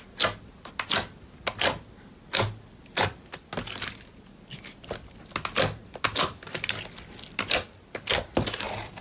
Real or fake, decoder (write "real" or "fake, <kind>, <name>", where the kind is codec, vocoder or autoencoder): real